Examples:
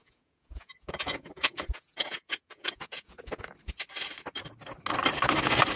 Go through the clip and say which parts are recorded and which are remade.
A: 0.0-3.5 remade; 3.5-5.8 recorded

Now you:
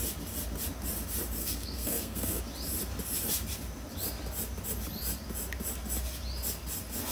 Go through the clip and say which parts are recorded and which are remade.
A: 0.0-1.4 recorded; 1.4-2.4 remade; 2.4-7.1 recorded